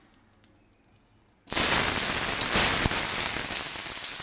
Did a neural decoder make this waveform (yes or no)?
no